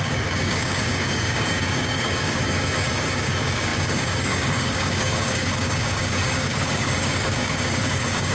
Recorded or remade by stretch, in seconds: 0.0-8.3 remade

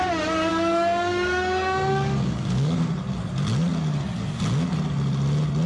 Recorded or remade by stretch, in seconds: 0.0-0.5 recorded; 0.5-2.9 remade; 2.9-5.7 recorded

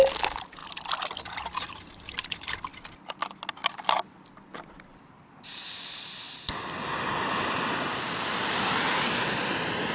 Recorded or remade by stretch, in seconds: 0.0-9.9 recorded

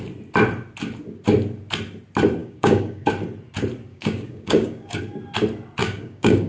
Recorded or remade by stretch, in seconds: 0.0-2.4 recorded; 2.4-3.1 remade; 3.1-3.9 recorded; 3.9-5.0 remade; 5.0-5.8 recorded; 5.8-6.5 remade